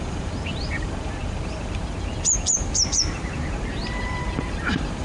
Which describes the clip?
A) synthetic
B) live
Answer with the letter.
A